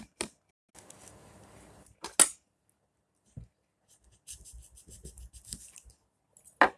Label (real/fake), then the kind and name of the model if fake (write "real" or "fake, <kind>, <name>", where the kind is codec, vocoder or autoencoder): real